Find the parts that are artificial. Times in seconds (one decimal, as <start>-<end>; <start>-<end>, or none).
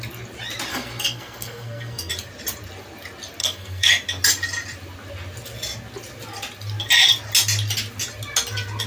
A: 0.7-2.1; 3.4-3.9